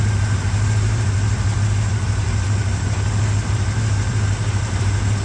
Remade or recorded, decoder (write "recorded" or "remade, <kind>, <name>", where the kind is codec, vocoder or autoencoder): remade, vocoder, BigVGAN v2